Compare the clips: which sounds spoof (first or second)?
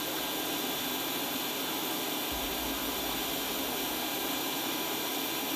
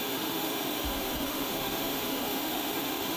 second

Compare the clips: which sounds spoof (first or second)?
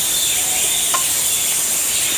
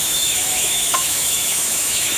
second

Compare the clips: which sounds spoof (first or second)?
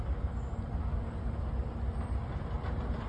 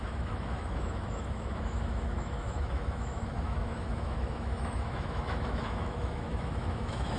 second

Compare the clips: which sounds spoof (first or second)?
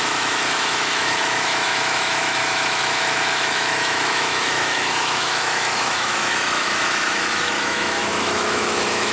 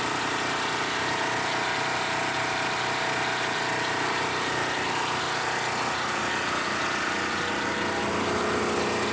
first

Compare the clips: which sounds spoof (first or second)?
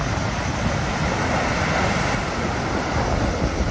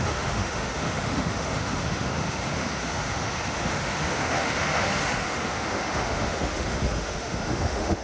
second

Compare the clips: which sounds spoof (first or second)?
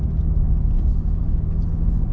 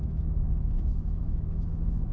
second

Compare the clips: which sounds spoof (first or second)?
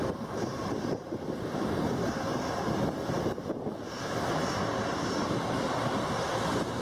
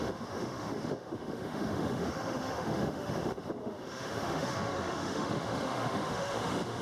second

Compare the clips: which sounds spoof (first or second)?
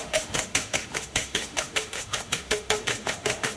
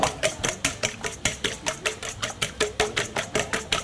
first